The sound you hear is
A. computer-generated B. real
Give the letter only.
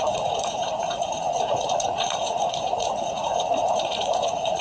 A